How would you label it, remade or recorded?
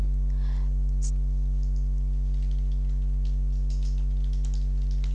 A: recorded